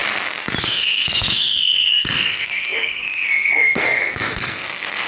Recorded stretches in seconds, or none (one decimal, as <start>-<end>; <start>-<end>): 0.0-0.6